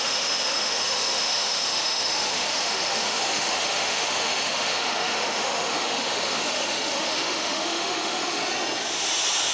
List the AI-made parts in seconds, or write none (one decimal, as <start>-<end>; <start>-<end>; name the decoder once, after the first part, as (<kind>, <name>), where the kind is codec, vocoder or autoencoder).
0.0-8.4 (autoencoder, DAC-VAE)